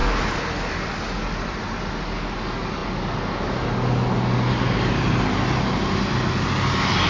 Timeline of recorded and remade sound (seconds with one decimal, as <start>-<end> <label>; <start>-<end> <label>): 0.0-7.1 recorded